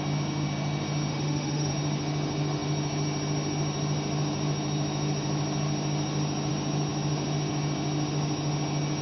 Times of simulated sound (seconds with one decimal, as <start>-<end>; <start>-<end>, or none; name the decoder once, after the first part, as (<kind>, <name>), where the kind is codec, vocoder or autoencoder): 1.1-1.7 (autoencoder, DAC-VAE)